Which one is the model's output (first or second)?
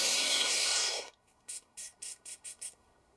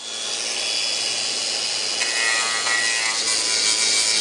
first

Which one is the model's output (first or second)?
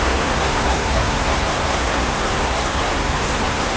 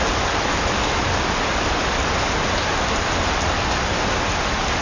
first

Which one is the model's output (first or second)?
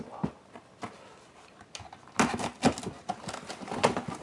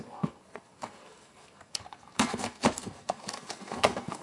second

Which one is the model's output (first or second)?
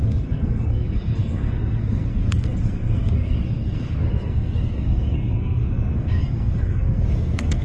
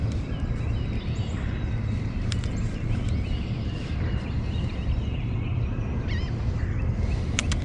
first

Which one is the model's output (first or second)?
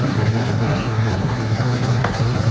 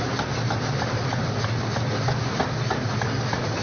first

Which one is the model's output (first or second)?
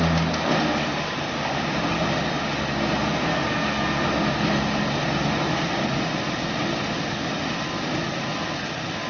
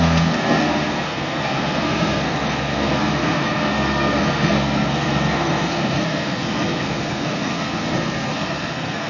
second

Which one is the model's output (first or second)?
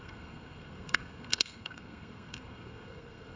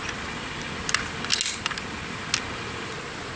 first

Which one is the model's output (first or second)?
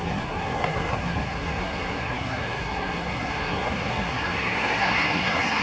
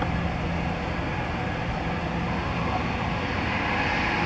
first